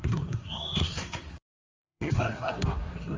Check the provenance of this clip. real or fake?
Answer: fake